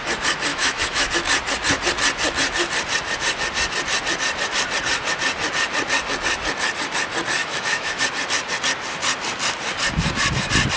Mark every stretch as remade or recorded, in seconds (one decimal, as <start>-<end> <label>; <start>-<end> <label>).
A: 0.0-0.5 recorded; 0.5-1.1 remade; 1.1-7.4 recorded; 7.4-8.0 remade; 8.0-10.8 recorded